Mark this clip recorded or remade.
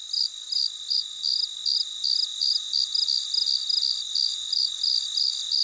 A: recorded